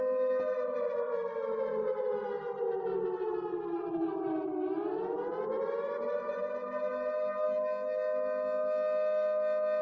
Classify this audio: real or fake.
real